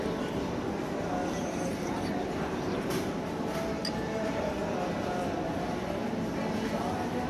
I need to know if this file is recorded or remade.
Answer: recorded